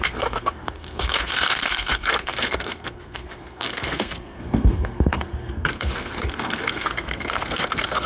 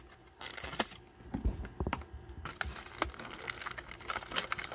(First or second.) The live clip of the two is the second